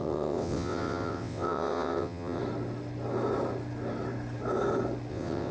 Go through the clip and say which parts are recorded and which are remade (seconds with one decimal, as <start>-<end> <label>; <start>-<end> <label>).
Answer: 0.0-2.4 remade; 2.4-5.1 recorded; 5.1-5.5 remade